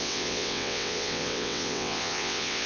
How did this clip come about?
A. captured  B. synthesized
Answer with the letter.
B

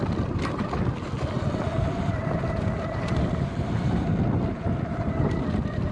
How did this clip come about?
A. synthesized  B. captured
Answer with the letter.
B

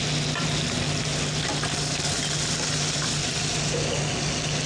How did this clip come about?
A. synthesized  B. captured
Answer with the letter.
B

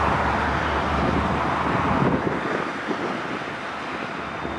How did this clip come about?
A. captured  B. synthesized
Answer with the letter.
A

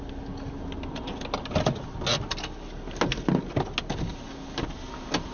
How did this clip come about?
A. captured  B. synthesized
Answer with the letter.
A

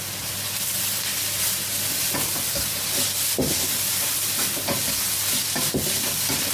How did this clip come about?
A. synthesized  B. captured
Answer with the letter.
B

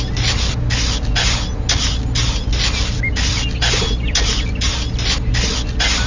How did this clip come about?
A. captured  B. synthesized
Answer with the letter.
A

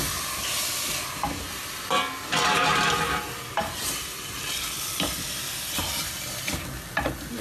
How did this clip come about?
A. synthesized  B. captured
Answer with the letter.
B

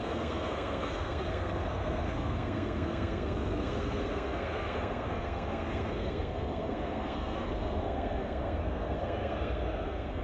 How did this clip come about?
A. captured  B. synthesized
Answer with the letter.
B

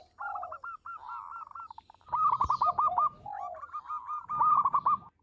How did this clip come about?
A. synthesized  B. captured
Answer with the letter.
B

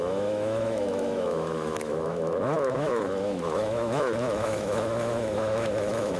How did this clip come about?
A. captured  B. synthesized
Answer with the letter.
B